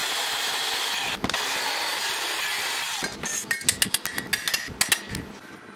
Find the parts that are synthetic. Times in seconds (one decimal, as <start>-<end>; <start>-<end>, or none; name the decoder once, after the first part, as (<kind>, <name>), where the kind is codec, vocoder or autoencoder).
0.0-0.6 (vocoder, BigVGAN v2)